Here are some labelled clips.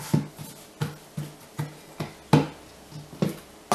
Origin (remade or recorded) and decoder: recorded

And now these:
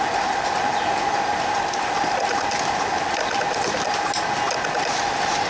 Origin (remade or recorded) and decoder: recorded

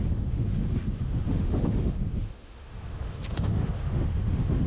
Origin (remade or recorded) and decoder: remade, autoencoder, DAC-VAE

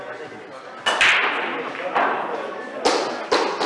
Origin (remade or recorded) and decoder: recorded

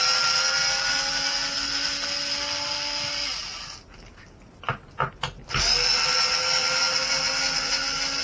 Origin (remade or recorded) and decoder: recorded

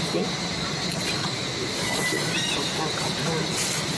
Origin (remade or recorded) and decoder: recorded